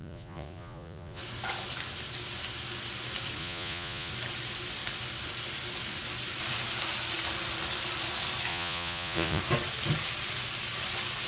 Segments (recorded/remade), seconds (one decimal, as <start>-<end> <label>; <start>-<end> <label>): 0.0-1.2 remade; 1.2-3.4 recorded; 3.4-4.1 remade; 4.1-8.5 recorded; 8.5-9.4 remade; 9.4-11.3 recorded